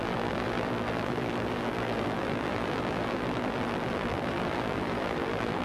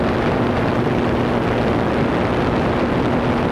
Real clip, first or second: second